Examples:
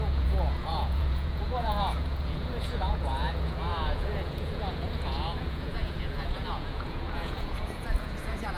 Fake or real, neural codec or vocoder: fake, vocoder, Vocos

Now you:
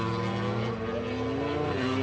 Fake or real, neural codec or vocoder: real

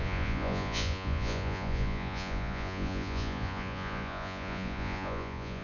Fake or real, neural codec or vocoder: fake, vocoder, Vocos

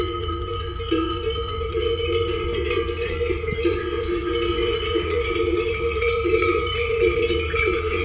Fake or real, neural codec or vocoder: fake, vocoder, Vocos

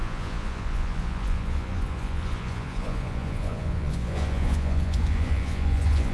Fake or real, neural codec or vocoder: fake, vocoder, Vocos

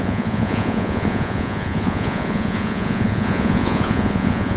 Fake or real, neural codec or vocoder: fake, vocoder, Vocos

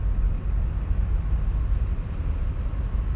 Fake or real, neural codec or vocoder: real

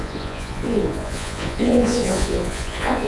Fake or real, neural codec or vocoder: fake, vocoder, Vocos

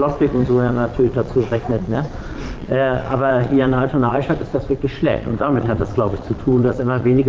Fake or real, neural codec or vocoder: fake, vocoder, Vocos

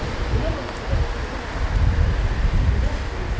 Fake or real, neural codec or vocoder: real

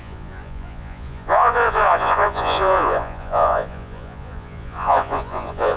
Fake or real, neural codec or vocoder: fake, vocoder, Vocos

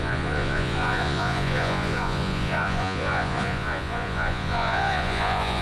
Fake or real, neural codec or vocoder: fake, vocoder, Vocos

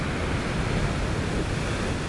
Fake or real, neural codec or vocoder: real